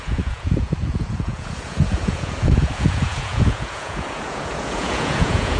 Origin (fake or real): fake